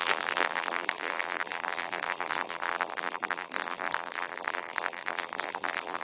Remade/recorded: remade